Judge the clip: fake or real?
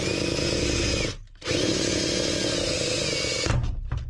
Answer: real